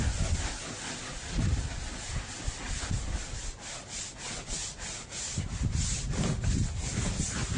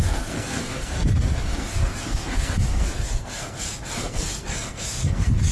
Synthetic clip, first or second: second